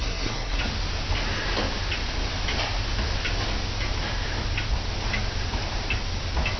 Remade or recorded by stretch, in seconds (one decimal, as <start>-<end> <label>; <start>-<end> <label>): 0.0-0.6 remade; 0.6-6.6 recorded